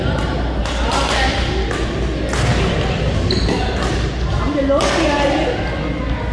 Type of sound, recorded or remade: recorded